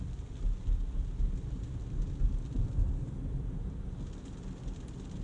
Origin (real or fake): real